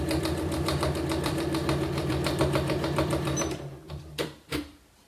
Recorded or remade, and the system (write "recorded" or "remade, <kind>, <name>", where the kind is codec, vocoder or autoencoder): remade, vocoder, BigVGAN v2